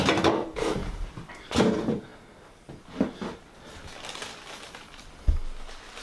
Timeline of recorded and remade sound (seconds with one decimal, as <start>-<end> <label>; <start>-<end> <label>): 0.0-2.1 remade; 2.1-6.0 recorded